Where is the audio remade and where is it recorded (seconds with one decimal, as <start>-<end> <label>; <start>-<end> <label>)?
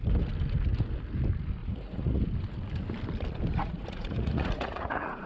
0.0-1.6 recorded; 1.6-2.2 remade; 2.2-3.6 recorded; 3.6-5.3 remade